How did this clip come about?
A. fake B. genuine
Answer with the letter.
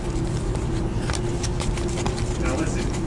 B